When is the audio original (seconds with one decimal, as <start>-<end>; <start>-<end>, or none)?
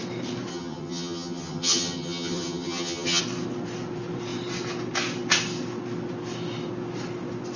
0.0-0.5; 3.2-7.6